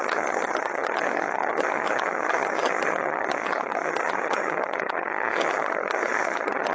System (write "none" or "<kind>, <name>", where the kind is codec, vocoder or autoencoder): vocoder, HiFi-GAN